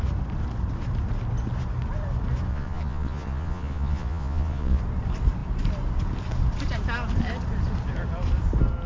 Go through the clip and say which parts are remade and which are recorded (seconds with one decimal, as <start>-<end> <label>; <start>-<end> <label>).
0.0-2.5 recorded; 2.5-4.8 remade; 4.8-8.9 recorded